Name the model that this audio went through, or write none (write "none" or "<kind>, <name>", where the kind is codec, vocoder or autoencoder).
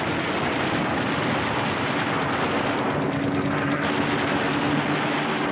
none